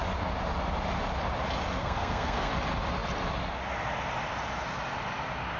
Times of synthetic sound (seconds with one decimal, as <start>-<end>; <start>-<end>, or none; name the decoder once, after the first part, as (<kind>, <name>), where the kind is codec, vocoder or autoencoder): 1.8-2.5 (codec, SNAC)